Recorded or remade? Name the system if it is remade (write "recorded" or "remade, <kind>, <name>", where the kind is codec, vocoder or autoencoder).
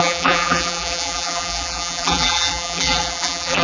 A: remade, vocoder, BigVGAN v2